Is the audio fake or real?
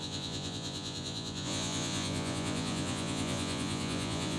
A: fake